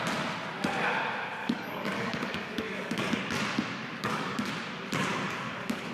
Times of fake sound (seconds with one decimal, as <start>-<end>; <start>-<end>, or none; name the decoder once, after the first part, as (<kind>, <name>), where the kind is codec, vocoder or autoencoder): 1.4-3.2 (codec, DAC); 4.0-4.5; 5.1-5.9